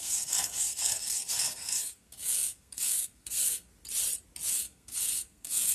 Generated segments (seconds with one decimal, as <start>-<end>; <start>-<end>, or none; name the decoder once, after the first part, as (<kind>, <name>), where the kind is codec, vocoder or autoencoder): 0.0-3.7 (codec, SNAC); 4.5-5.7